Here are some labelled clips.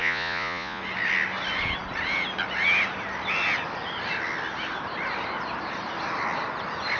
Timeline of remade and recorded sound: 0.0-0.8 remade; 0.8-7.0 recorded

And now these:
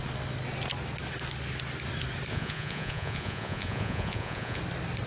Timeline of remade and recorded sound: 0.0-2.3 recorded; 2.3-4.6 remade; 4.6-5.1 recorded

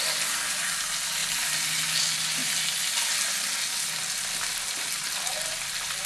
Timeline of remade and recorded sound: 0.0-6.1 recorded

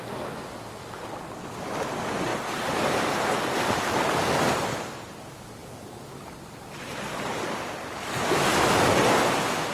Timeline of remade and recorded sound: 0.0-5.6 recorded; 5.6-7.4 remade; 7.4-9.7 recorded

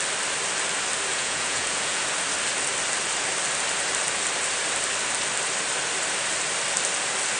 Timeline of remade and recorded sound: 0.0-1.1 recorded; 1.1-2.0 remade; 2.0-7.4 recorded

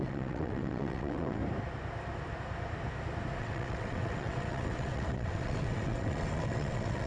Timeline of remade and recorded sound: 0.0-1.4 remade; 1.4-3.4 recorded; 3.4-7.1 remade